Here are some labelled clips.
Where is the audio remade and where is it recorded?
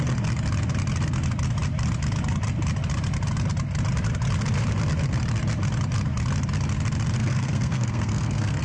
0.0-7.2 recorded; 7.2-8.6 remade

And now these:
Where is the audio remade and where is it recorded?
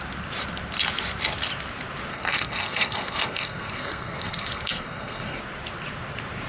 0.0-2.1 recorded; 2.1-5.4 remade; 5.4-6.5 recorded